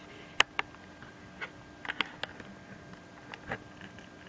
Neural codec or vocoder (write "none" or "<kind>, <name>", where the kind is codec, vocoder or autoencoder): none